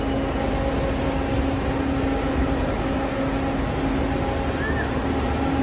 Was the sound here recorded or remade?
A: recorded